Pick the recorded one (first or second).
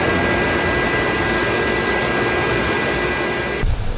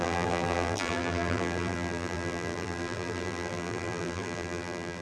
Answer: first